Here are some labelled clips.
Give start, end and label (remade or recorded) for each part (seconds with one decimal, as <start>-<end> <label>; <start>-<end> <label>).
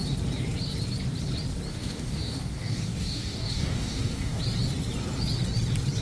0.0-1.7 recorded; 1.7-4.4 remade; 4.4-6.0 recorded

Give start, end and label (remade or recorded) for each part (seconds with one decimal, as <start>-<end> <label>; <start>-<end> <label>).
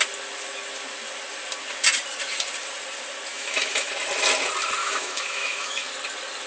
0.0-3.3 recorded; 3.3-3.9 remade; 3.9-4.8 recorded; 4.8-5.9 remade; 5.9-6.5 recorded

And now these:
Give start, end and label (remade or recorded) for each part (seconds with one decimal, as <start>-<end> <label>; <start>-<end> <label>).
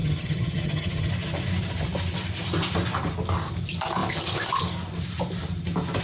0.0-1.1 remade; 1.1-6.0 recorded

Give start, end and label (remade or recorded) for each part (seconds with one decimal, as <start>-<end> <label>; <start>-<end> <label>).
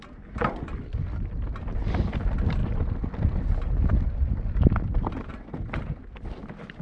0.0-6.8 recorded